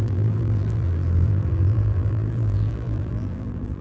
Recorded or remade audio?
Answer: remade